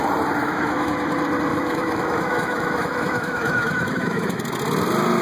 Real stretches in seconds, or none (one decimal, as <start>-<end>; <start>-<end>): 0.0-0.4; 0.9-1.5; 4.4-5.2